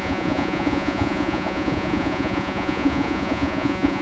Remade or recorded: remade